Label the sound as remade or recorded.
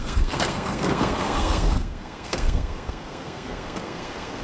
remade